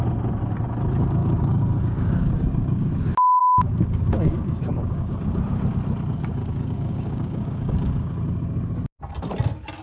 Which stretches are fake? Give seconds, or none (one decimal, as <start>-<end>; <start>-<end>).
1.2-2.9; 3.4-5.1; 6.4-8.2